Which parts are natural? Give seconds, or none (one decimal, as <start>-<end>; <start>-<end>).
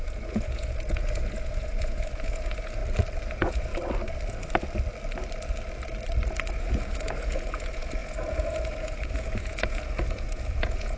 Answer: 2.8-3.3; 3.7-6.5